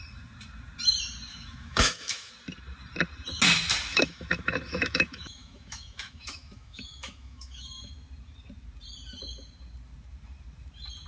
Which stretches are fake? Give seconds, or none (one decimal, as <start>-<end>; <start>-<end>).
1.3-2.3; 3.9-7.9